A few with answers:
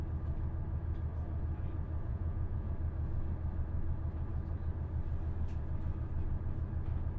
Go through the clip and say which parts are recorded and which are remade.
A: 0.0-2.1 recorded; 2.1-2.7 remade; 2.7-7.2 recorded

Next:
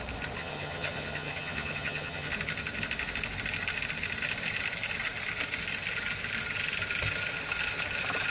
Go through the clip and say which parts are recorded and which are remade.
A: 0.0-0.4 recorded; 0.4-2.3 remade; 2.3-8.3 recorded